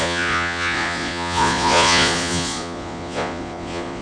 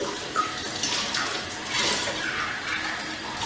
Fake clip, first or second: first